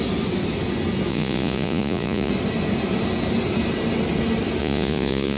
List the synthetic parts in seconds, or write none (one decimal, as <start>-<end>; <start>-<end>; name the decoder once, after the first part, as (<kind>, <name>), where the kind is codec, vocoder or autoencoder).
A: 1.1-2.3 (vocoder, Vocos); 4.6-5.4